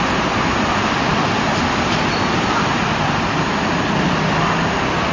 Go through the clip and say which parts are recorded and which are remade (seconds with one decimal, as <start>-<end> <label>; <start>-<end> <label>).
0.0-5.1 recorded